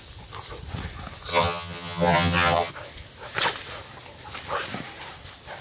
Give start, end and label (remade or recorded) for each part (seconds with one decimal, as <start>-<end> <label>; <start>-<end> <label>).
0.0-1.3 recorded; 1.3-2.7 remade; 2.7-5.6 recorded

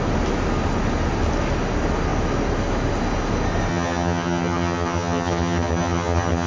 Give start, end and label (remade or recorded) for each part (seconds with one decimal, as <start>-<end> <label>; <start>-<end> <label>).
0.0-3.7 recorded; 3.7-6.5 remade

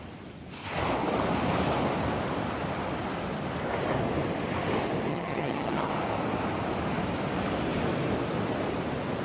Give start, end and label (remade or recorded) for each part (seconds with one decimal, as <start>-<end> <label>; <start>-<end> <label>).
0.0-5.1 recorded; 5.1-5.9 remade; 5.9-9.2 recorded

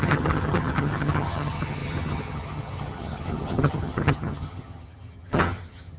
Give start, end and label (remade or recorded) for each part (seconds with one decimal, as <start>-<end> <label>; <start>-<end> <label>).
0.0-6.0 remade

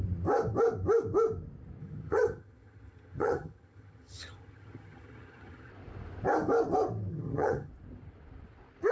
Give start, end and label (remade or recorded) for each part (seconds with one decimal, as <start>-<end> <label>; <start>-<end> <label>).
0.0-1.8 recorded; 1.8-5.7 remade; 5.7-7.1 recorded; 7.1-7.7 remade; 7.7-8.9 recorded

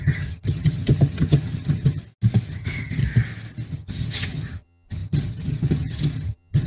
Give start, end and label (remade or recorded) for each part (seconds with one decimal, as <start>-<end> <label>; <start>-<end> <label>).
0.0-2.0 remade; 2.0-2.5 recorded; 2.5-3.0 remade; 3.0-3.7 recorded; 3.7-6.7 remade

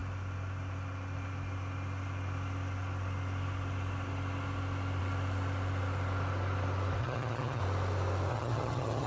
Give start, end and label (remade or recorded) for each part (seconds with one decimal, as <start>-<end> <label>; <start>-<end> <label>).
0.0-7.0 recorded; 7.0-7.6 remade; 7.6-8.3 recorded; 8.3-9.1 remade

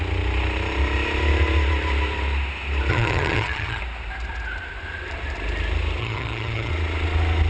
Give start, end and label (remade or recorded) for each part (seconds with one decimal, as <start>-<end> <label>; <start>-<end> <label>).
0.0-2.9 recorded; 2.9-3.8 remade; 3.8-6.0 recorded; 6.0-6.7 remade; 6.7-7.5 recorded